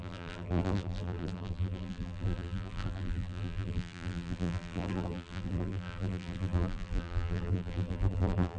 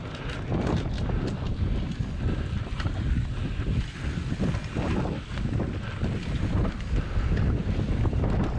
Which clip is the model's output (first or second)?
first